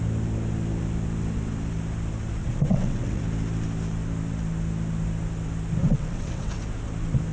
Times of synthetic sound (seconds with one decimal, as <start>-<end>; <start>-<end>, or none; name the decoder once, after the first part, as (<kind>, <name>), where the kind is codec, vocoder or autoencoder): 2.4-3.2 (vocoder, WaveNeXt); 5.8-6.6